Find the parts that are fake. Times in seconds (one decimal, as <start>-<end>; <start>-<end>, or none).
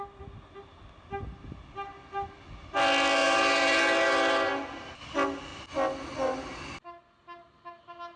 3.2-3.8